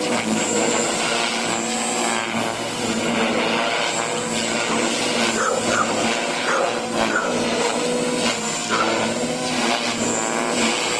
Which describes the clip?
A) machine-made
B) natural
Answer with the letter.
B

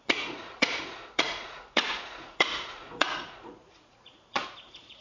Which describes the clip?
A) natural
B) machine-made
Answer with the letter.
B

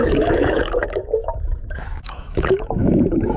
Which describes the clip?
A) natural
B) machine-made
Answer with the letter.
B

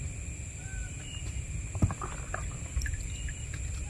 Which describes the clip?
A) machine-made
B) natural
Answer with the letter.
B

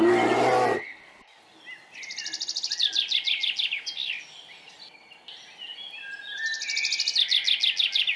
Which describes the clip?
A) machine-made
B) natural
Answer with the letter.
B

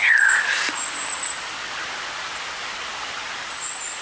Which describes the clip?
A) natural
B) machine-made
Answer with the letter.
A